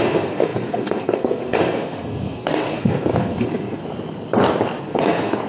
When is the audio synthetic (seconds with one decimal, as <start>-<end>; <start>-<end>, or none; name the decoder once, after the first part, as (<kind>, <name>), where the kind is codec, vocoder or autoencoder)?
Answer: 0.0-3.8 (codec, SNAC); 4.8-5.5